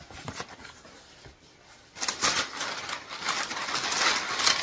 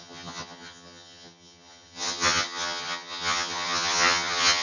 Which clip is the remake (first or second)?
second